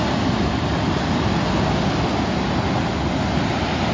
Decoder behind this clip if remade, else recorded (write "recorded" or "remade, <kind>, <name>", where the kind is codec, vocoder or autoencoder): recorded